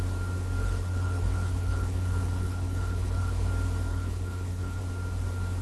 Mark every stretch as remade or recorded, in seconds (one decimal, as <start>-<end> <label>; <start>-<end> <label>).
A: 0.0-0.6 recorded; 0.6-3.5 remade; 3.5-3.9 recorded; 3.9-4.8 remade; 4.8-5.6 recorded